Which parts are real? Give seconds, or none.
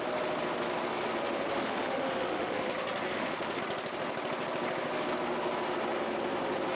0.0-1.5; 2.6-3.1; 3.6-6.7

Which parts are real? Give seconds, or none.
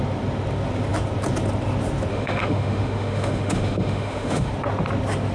0.0-2.1; 4.5-5.3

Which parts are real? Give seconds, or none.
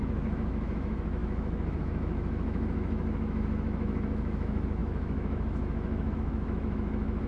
none